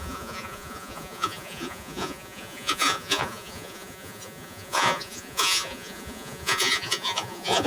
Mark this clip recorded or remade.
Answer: remade